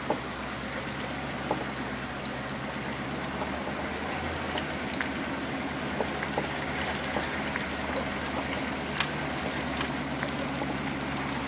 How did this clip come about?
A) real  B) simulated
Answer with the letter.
A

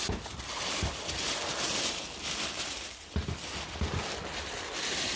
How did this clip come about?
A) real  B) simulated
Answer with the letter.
A